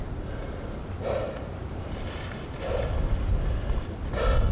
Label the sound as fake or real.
real